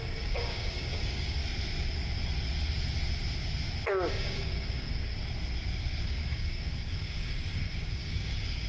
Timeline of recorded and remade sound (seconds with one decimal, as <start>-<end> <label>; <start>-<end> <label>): 0.0-1.4 remade; 1.4-4.1 recorded; 4.1-5.1 remade; 5.1-6.0 recorded; 6.0-8.7 remade